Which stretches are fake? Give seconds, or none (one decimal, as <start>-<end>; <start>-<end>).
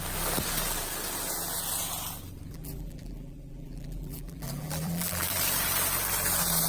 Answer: 2.5-5.4